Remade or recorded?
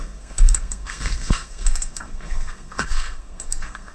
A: remade